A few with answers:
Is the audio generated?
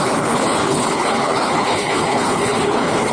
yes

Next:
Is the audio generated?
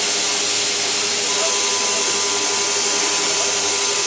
no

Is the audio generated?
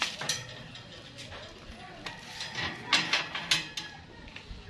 no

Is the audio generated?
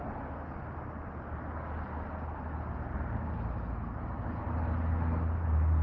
no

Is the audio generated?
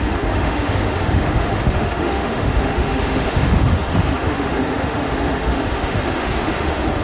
yes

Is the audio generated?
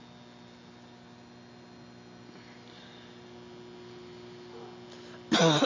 no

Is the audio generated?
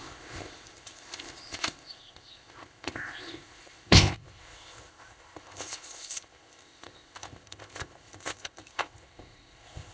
yes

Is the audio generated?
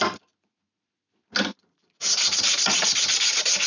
no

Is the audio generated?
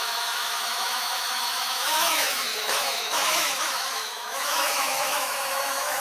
yes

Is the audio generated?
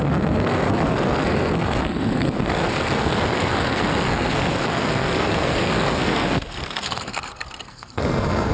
yes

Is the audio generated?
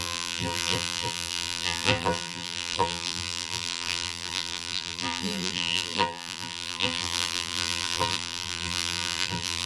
yes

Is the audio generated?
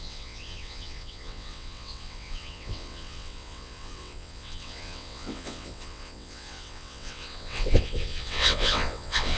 yes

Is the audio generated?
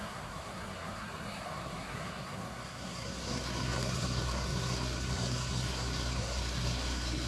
yes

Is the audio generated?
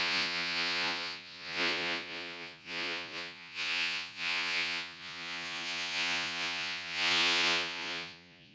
yes